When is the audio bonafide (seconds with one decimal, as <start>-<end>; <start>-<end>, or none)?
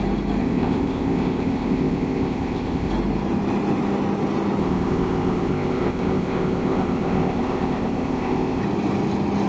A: 0.0-0.4; 2.9-4.6; 8.6-9.5